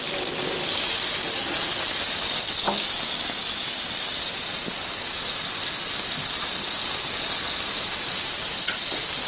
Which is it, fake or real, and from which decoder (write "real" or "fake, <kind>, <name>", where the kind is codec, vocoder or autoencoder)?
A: real